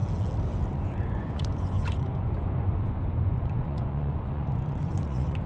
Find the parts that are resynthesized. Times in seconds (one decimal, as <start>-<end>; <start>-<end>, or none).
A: 0.7-5.5